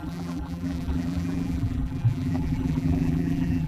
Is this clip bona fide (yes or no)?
no